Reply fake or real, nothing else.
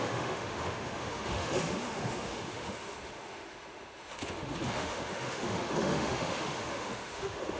fake